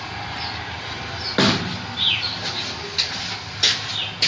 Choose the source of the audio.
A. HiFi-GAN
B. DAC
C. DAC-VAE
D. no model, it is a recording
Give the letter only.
D